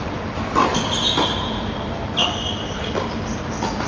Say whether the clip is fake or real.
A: real